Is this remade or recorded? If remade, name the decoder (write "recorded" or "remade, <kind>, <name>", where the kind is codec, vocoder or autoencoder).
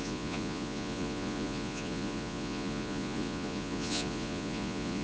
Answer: remade, vocoder, Vocos